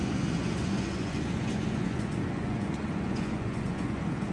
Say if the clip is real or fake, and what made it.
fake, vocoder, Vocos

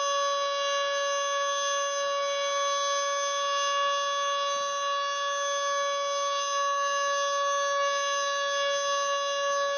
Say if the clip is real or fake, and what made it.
real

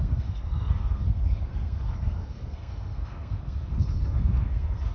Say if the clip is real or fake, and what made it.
fake, codec, SNAC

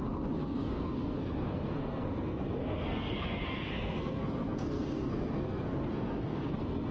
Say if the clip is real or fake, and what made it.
fake, codec, SNAC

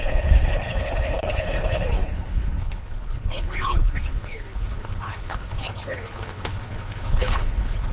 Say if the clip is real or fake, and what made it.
fake, codec, HILCodec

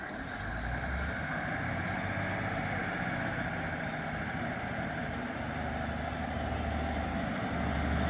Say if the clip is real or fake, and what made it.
real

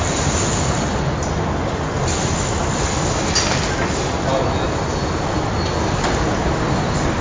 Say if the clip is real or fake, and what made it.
real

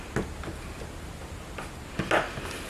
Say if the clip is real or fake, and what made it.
real